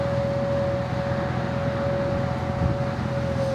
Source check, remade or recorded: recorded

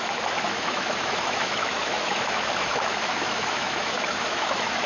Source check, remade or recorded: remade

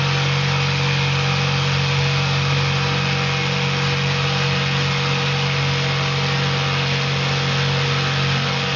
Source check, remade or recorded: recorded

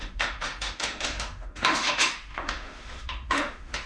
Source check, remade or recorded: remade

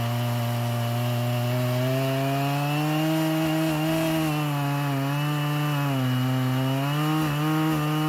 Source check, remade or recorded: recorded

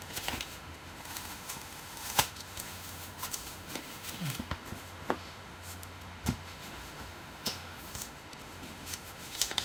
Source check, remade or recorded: remade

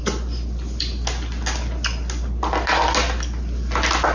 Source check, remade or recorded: recorded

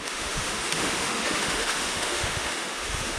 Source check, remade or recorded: remade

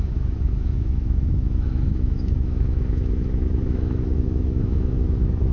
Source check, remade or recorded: remade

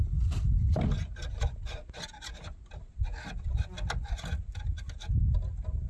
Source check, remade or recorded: recorded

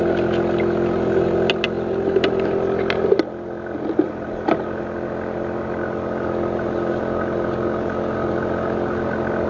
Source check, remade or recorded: recorded